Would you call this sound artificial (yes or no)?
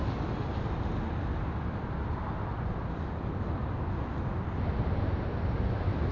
no